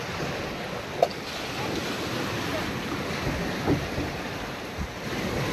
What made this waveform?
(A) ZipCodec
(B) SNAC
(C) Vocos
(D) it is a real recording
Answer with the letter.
D